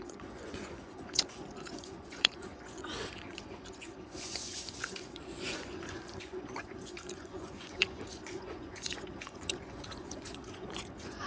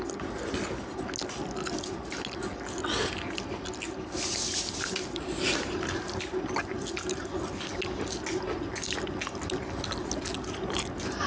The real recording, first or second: second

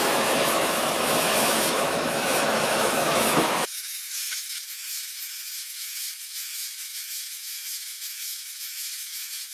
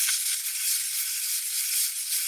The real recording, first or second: second